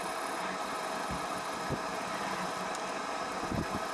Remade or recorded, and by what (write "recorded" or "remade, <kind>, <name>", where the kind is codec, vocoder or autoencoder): recorded